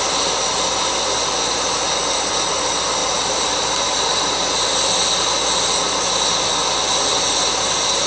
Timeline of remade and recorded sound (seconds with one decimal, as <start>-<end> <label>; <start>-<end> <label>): 0.0-3.0 recorded; 3.0-5.1 remade; 5.1-8.1 recorded